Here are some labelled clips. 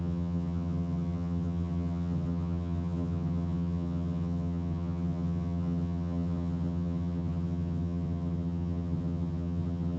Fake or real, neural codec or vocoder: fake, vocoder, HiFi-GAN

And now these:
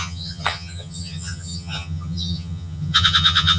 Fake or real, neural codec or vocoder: fake, vocoder, HiFi-GAN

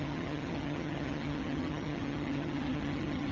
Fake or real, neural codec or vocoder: fake, vocoder, HiFi-GAN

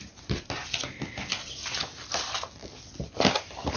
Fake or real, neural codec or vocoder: real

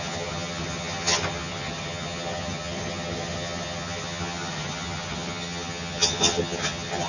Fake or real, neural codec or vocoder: fake, vocoder, HiFi-GAN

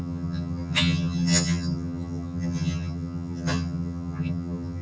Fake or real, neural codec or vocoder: fake, vocoder, HiFi-GAN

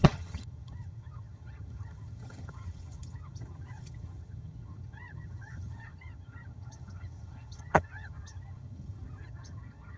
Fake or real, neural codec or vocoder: fake, vocoder, HiFi-GAN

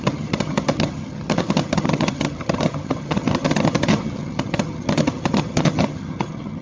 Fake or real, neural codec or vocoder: fake, vocoder, HiFi-GAN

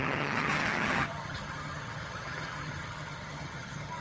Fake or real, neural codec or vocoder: fake, vocoder, HiFi-GAN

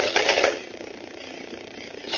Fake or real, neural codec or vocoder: fake, vocoder, HiFi-GAN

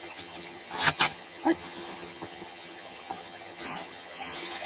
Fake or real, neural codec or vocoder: fake, vocoder, HiFi-GAN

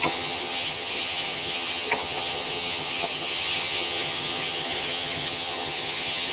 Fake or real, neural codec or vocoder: fake, vocoder, HiFi-GAN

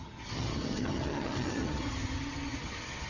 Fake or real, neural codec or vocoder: fake, vocoder, HiFi-GAN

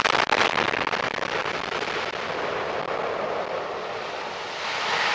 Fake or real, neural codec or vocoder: real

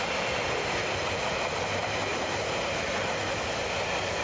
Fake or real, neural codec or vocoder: real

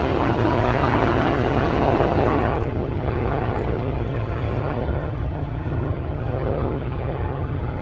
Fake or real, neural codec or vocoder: fake, vocoder, HiFi-GAN